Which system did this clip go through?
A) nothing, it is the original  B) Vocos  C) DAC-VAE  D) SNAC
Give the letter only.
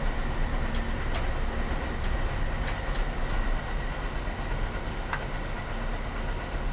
A